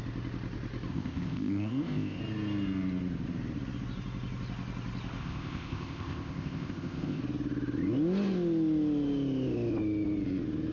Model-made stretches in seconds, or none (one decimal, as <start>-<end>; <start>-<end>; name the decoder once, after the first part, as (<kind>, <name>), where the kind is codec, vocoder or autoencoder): 0.9-2.2 (codec, ZipCodec); 5.2-7.2